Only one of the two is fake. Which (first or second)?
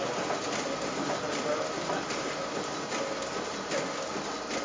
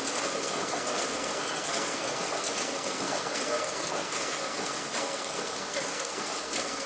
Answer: second